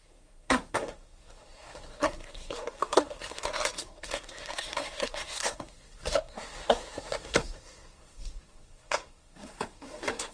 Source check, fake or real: fake